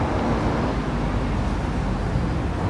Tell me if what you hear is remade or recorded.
recorded